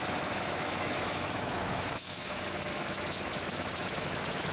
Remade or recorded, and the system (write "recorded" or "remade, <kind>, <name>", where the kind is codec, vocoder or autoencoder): remade, autoencoder, DAC-VAE